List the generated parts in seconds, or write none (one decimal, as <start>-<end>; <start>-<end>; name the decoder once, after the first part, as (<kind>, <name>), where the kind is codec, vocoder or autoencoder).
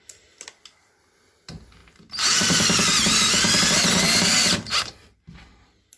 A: none